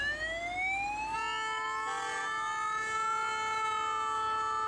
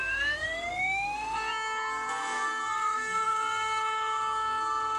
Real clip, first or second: first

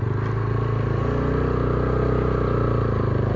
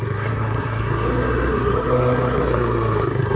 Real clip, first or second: first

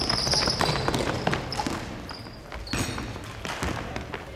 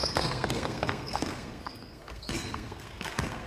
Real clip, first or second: first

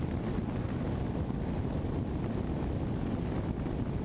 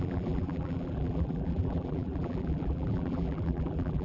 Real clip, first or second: first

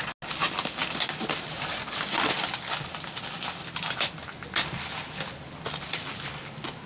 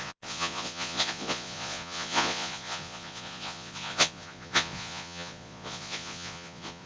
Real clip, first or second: first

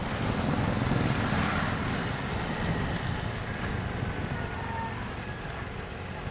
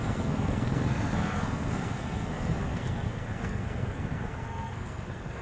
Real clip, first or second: first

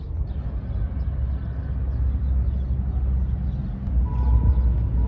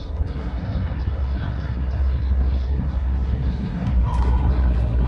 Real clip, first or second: first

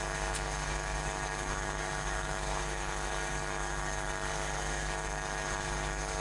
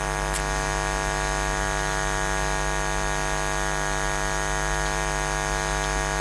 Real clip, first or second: second